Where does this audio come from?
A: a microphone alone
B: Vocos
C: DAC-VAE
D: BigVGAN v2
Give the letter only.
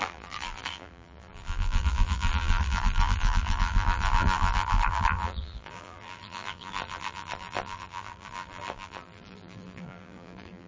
D